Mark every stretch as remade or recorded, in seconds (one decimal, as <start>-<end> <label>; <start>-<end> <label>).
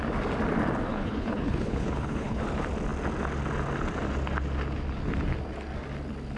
0.0-0.9 recorded; 0.9-2.4 remade; 2.4-6.4 recorded